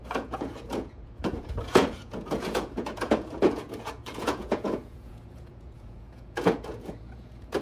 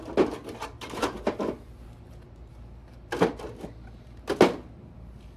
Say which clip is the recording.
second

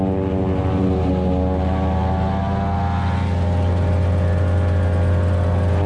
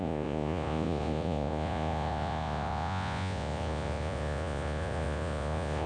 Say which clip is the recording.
first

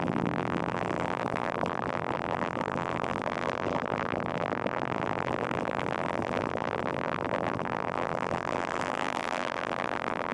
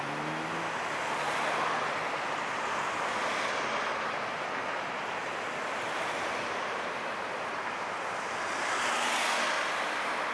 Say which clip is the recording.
second